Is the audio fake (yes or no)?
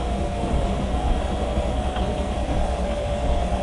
yes